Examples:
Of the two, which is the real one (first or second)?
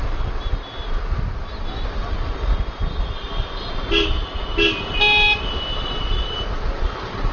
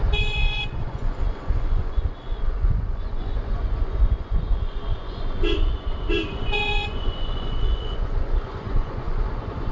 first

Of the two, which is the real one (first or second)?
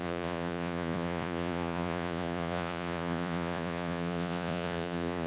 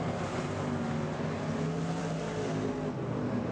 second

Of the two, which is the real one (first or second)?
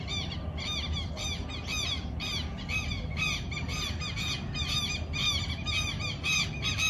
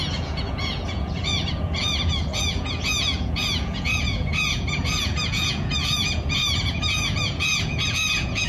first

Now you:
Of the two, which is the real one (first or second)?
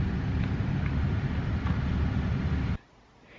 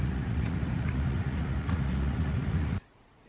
first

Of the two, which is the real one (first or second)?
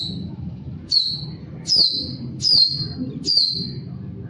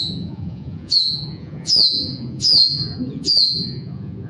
first